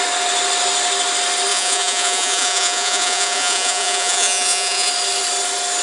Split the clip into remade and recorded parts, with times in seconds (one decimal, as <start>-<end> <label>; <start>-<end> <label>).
0.0-1.5 recorded; 1.5-4.9 remade; 4.9-5.8 recorded